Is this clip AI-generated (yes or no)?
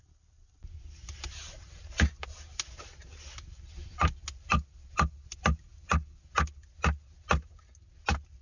no